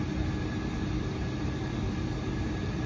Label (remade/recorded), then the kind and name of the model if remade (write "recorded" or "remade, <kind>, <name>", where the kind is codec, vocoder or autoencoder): recorded